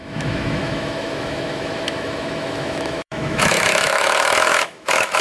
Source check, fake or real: fake